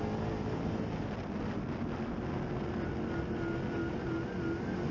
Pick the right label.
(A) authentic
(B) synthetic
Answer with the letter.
A